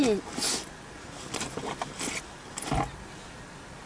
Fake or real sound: real